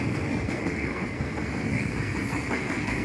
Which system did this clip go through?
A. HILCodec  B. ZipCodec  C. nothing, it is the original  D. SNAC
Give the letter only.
D